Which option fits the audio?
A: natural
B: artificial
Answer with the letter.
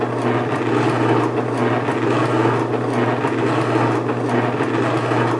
A